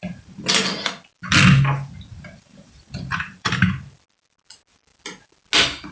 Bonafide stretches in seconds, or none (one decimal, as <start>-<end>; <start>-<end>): 0.9-2.1; 3.5-5.9

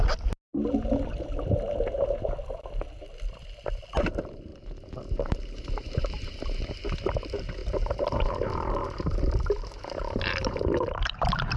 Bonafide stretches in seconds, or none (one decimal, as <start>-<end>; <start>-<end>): 0.0-4.5; 6.6-7.6

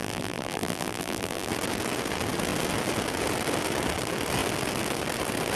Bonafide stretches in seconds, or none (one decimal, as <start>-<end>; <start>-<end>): 1.5-5.6

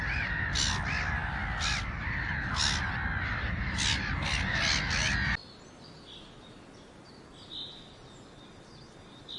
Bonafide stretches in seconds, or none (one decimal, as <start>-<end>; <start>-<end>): 0.0-9.4

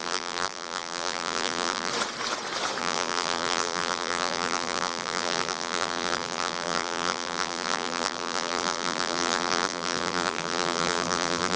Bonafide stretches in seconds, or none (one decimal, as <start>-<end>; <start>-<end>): 1.9-2.8